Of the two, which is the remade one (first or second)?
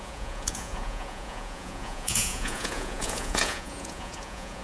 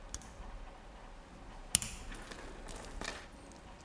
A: first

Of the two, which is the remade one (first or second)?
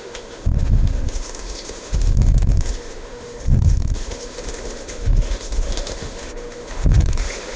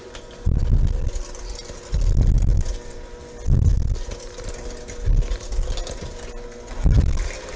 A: first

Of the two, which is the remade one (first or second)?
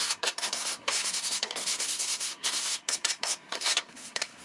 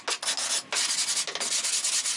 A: first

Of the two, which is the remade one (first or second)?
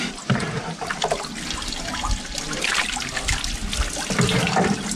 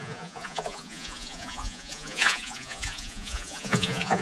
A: second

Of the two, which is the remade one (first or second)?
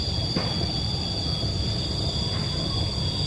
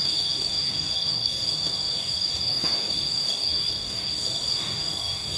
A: second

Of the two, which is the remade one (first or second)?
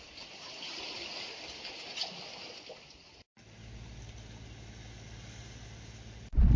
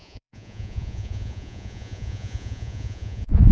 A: second